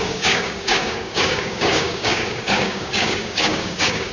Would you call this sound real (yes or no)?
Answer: no